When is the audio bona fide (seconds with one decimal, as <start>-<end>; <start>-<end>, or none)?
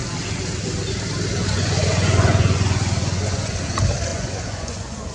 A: 0.0-1.4; 3.6-4.1